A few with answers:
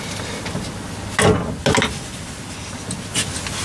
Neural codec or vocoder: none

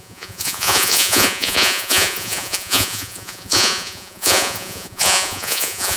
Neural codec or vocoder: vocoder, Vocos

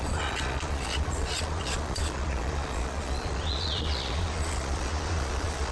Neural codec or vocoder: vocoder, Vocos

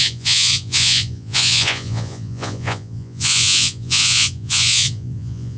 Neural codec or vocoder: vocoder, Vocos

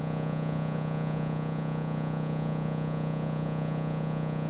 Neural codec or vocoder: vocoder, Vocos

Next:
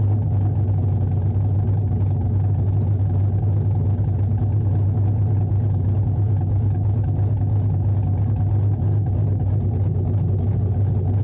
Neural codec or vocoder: none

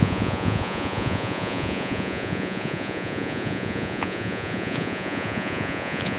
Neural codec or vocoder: vocoder, Vocos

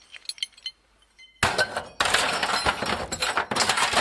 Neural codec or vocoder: none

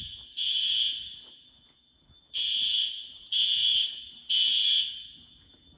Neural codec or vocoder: vocoder, Vocos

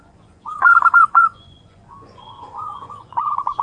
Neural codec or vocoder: vocoder, Vocos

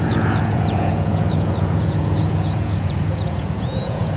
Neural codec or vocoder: vocoder, Vocos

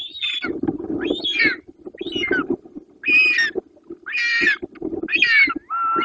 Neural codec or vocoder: none